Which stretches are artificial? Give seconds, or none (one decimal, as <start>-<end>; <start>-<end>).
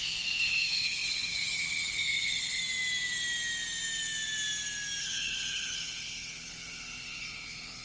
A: 0.0-2.6; 5.0-7.8